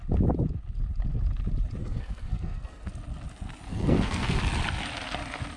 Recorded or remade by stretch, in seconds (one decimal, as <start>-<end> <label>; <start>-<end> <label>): 0.0-1.8 recorded; 1.8-2.9 remade; 2.9-3.7 recorded; 3.7-4.4 remade; 4.4-5.6 recorded